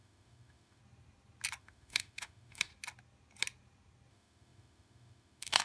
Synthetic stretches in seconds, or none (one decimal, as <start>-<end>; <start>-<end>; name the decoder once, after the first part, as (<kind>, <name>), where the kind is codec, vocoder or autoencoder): 0.0-0.8 (autoencoder, DAC-VAE); 1.6-2.7; 4.1-5.6